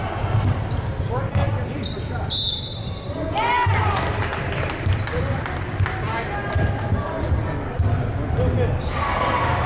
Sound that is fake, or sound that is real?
real